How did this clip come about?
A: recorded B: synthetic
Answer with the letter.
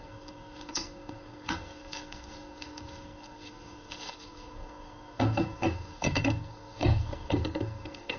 B